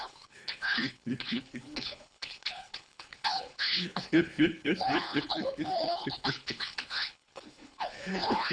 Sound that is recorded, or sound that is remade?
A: remade